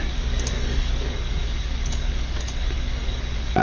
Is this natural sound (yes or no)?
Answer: no